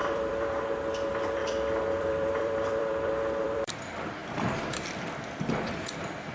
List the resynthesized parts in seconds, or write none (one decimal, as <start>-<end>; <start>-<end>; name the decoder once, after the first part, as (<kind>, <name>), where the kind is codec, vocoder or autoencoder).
0.0-0.6 (vocoder, BigVGAN v2); 1.4-3.7